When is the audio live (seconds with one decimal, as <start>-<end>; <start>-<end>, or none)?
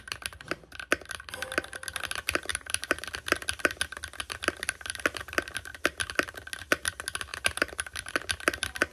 0.0-2.5; 3.1-7.3; 8.1-8.9